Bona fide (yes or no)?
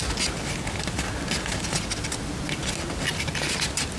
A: yes